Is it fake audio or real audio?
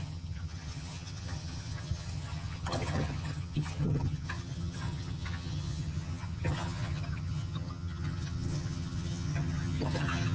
fake